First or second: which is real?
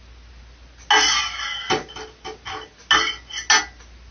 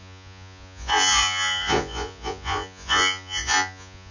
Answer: first